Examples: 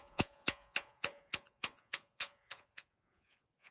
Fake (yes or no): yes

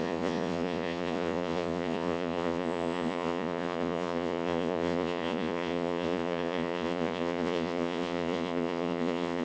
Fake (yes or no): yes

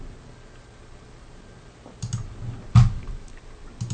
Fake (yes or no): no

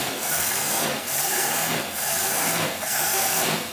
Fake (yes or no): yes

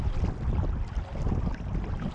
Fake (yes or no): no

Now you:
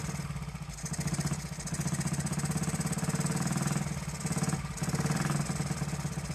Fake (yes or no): no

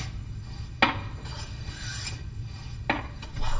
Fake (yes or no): no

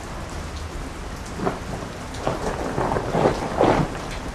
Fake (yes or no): no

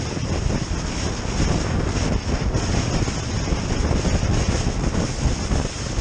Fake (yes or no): no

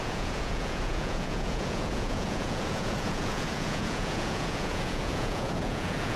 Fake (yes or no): yes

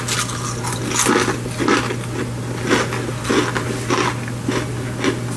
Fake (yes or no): no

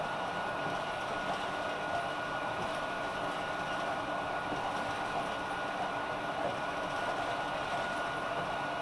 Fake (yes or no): no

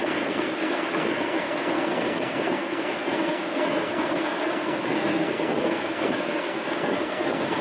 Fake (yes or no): yes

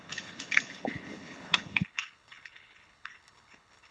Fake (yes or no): yes